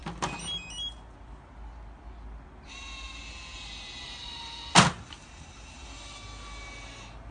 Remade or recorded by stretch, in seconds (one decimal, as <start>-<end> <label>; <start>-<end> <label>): 0.0-4.0 recorded; 4.0-4.6 remade; 4.6-7.3 recorded